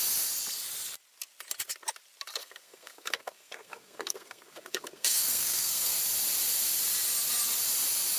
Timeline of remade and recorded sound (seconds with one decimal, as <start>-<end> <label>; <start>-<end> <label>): 0.0-2.4 recorded; 2.4-6.0 remade; 6.0-8.2 recorded